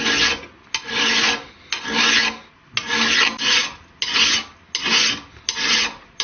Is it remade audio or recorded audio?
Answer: recorded